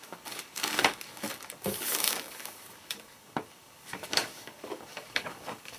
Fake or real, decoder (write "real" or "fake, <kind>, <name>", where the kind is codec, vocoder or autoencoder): fake, codec, DAC